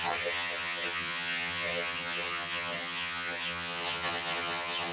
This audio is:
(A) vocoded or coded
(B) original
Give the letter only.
A